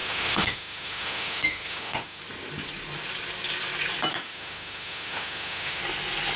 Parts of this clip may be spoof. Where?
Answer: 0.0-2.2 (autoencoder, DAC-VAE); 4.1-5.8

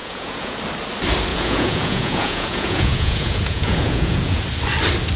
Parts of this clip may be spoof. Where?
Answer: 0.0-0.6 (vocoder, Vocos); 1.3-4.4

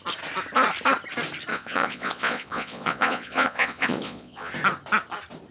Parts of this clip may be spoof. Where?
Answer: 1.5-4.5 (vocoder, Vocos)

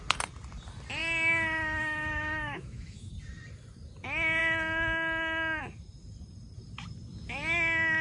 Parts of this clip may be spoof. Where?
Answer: 1.0-3.1 (autoencoder, DAC-VAE)

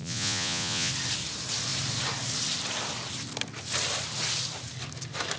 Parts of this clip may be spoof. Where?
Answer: 0.0-0.9 (vocoder, Vocos)

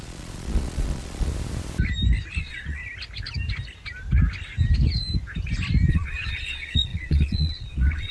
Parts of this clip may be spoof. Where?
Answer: 0.0-1.3 (vocoder, Vocos); 2.4-2.8; 5.9-8.1

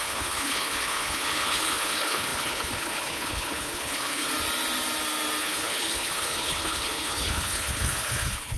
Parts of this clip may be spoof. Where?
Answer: 0.0-4.3 (codec, HILCodec); 5.4-8.6

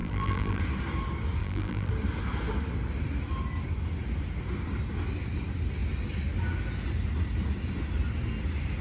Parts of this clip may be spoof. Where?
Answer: 0.0-0.6 (vocoder, BigVGAN v2); 1.4-1.9